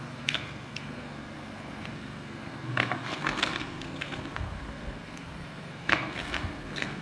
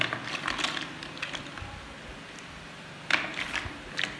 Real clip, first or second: second